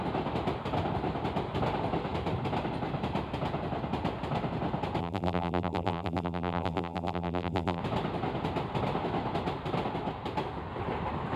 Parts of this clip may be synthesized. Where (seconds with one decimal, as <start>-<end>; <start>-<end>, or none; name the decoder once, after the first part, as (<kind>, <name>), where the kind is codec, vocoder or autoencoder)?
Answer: 5.0-7.8 (vocoder, BigVGAN v2)